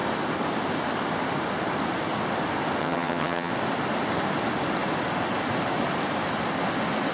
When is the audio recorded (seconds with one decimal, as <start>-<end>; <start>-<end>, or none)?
0.0-2.8; 3.5-7.1